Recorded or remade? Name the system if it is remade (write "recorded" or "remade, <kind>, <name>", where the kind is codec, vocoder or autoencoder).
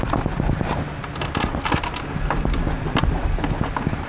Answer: recorded